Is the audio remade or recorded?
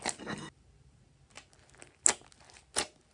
recorded